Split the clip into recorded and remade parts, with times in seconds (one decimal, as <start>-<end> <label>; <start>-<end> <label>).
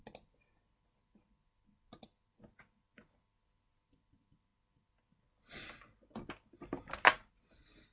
0.0-7.9 recorded